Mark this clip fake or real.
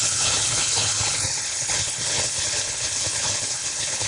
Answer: fake